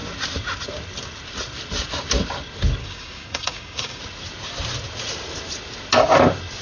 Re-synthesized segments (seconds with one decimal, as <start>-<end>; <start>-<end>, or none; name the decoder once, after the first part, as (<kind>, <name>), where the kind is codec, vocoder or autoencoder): 2.8-4.0 (codec, DAC)

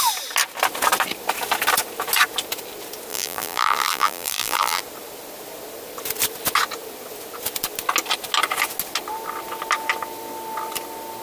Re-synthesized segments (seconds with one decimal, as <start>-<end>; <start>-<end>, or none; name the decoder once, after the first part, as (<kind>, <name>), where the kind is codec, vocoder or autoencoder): 3.1-4.8 (vocoder, BigVGAN v2)